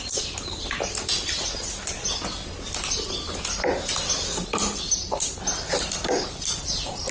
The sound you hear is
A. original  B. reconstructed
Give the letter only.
A